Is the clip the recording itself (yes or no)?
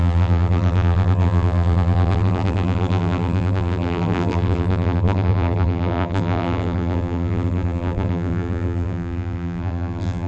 no